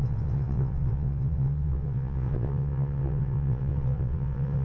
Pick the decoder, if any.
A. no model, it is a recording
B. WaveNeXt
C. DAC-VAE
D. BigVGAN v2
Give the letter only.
B